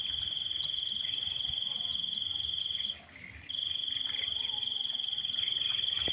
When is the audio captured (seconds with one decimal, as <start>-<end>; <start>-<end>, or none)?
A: 0.0-6.1